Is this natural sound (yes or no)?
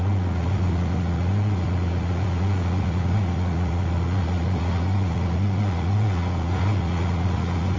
no